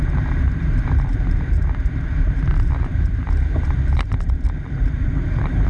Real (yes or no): no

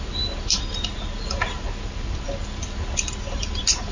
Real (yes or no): yes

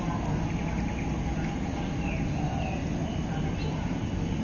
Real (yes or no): yes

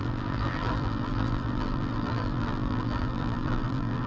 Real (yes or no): no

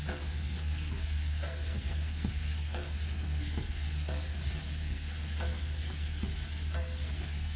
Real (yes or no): no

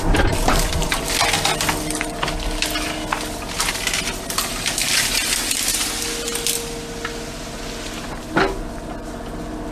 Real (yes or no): yes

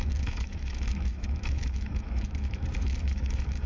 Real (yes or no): no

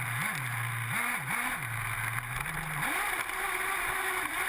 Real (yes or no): yes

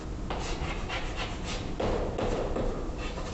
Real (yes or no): yes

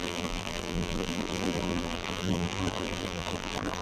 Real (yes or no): no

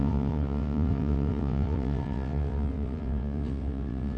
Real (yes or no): no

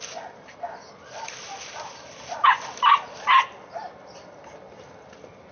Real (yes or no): yes